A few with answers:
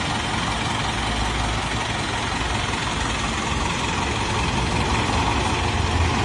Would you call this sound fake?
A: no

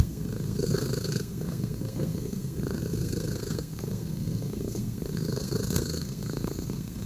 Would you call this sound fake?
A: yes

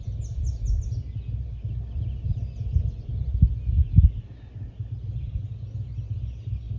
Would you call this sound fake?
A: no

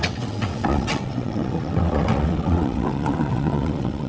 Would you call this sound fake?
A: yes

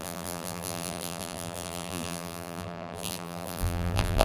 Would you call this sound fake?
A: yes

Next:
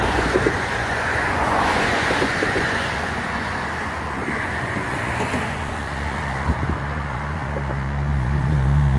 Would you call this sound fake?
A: yes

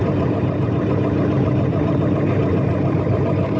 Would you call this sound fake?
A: yes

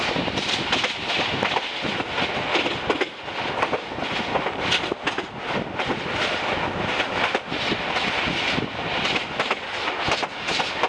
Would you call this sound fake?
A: no